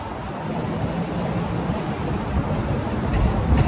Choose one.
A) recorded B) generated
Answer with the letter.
A